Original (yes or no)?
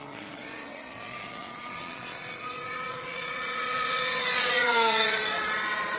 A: no